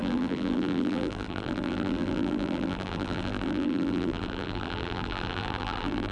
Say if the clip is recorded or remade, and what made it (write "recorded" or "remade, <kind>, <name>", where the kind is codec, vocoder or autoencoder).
remade, vocoder, BigVGAN v2